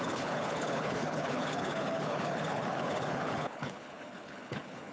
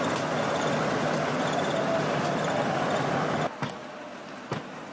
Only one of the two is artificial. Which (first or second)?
first